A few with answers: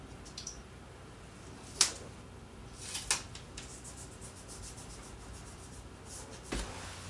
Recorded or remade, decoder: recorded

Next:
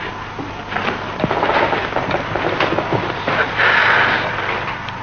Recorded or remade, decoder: recorded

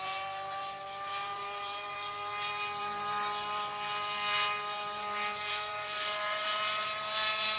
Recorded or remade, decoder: remade, vocoder, BigVGAN v2